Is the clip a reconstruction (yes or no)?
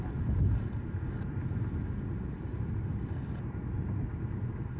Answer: no